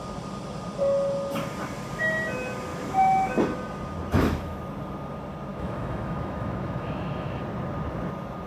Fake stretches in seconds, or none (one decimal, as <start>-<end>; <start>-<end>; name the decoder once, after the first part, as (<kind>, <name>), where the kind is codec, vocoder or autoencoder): 2.7-3.3 (autoencoder, DAC-VAE); 4.1-4.6; 5.5-7.4